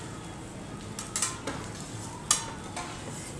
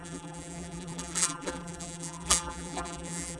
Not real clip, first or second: second